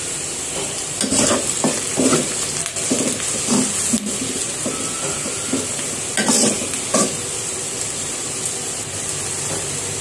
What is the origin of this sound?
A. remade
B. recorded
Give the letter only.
B